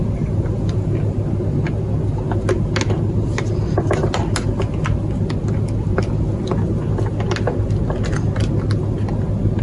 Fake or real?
real